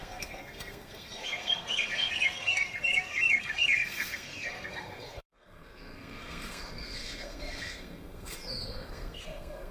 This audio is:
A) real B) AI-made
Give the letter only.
B